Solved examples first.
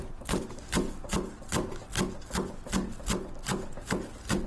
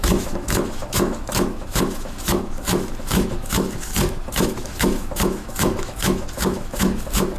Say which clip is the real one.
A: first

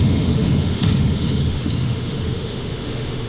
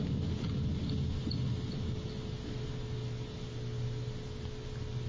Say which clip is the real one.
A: second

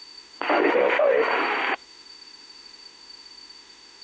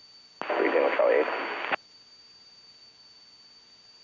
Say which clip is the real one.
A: second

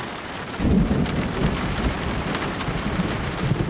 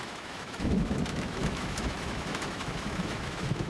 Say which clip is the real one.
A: first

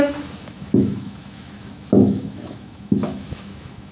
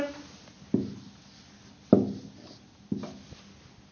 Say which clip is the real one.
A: second